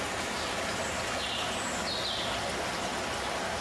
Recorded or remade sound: recorded